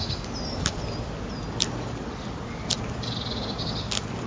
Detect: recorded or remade recorded